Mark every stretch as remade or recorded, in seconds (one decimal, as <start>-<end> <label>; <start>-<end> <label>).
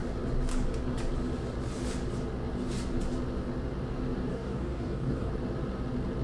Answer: 0.0-4.3 recorded; 4.3-5.3 remade; 5.3-6.2 recorded